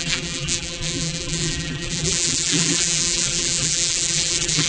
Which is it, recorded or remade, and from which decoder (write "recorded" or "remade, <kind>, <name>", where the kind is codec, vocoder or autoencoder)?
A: remade, vocoder, BigVGAN v2